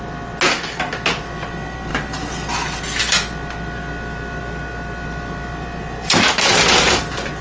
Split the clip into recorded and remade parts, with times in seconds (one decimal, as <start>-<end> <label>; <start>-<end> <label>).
0.0-7.4 recorded